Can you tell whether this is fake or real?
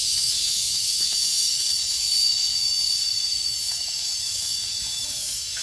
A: fake